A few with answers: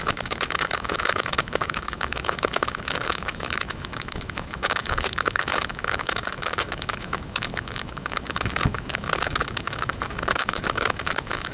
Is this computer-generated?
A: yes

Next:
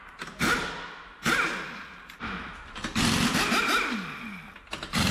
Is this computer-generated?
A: no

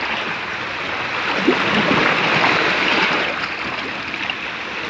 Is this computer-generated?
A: no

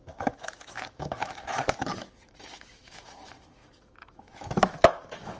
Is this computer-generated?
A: yes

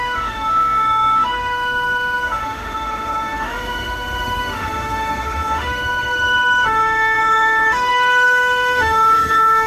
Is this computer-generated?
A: yes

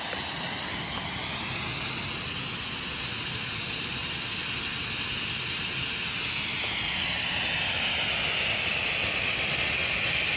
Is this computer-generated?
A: no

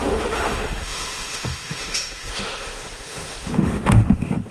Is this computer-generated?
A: yes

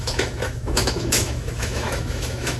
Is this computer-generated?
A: yes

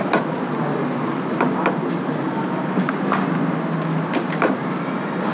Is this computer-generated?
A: no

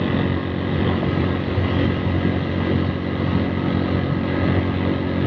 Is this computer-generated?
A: no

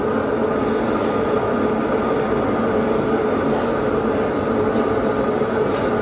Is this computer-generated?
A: no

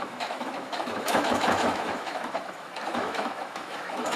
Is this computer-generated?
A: yes